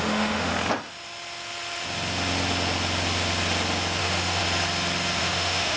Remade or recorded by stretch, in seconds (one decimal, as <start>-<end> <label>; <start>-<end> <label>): 0.0-0.5 remade; 0.5-4.0 recorded; 4.0-4.4 remade; 4.4-5.2 recorded; 5.2-5.8 remade